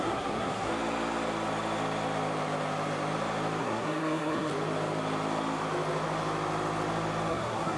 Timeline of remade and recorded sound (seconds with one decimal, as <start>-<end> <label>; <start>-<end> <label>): 0.0-0.7 remade; 0.7-3.6 recorded; 3.6-4.5 remade; 4.5-7.3 recorded; 7.3-7.8 remade